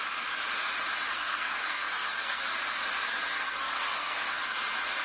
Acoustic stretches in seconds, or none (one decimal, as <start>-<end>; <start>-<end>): 0.0-1.1; 2.5-3.0; 4.4-5.0